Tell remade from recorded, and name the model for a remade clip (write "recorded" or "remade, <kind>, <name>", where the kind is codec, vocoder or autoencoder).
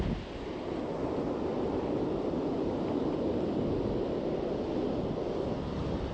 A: recorded